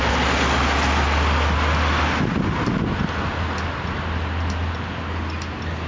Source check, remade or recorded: recorded